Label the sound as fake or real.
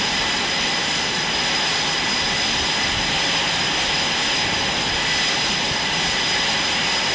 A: real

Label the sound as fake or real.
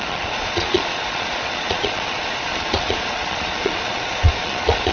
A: fake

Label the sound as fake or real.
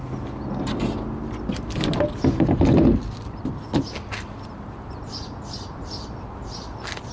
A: real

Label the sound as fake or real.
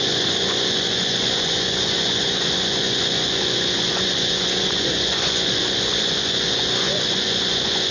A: fake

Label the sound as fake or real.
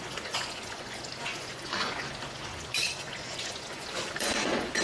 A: fake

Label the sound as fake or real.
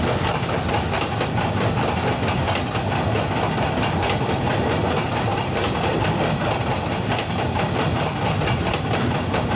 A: real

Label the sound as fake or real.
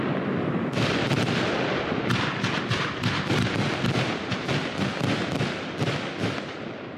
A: real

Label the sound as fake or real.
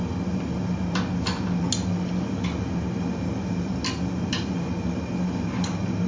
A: real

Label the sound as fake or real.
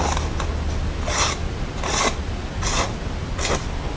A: real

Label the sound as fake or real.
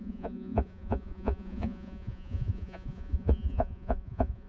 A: fake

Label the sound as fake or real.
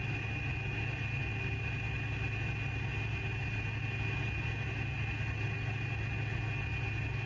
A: real